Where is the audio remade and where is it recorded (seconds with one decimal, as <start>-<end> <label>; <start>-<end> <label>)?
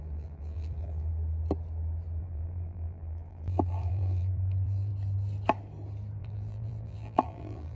0.0-1.1 remade; 1.1-2.2 recorded; 2.2-4.9 remade; 4.9-6.2 recorded; 6.2-7.8 remade